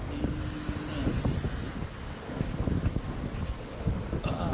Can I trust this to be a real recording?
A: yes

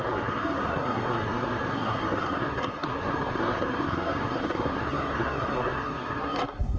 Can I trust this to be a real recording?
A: no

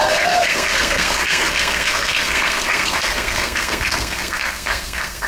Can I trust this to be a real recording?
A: no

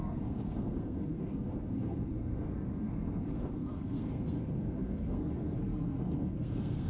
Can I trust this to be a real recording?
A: no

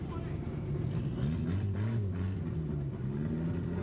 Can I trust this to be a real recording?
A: yes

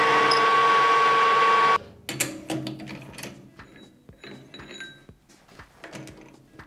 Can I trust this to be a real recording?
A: yes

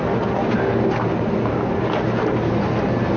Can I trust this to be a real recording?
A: yes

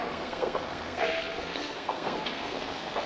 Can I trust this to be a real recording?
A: no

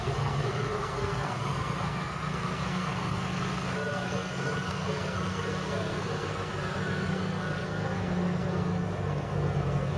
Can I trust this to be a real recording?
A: no